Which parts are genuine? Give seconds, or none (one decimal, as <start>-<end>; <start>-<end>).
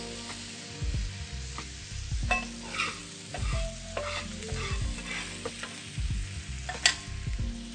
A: 0.0-7.7